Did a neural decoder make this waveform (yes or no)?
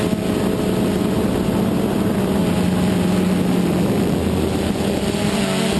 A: no